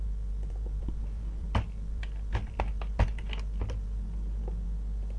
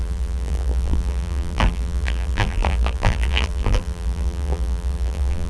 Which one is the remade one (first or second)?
second